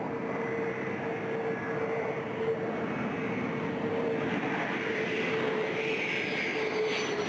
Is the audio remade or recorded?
recorded